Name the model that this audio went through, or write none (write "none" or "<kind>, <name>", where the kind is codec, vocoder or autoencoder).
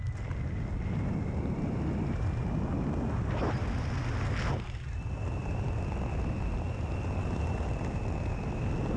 none